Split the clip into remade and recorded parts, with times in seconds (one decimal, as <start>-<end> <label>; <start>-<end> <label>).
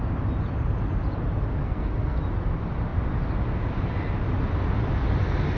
0.0-1.6 recorded; 1.6-2.2 remade; 2.2-5.6 recorded